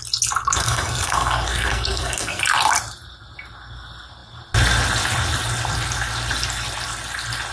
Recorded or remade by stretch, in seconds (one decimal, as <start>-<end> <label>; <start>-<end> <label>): 0.0-0.4 recorded; 0.4-2.4 remade; 2.4-7.5 recorded